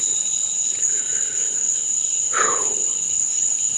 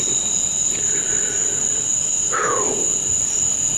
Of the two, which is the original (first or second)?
second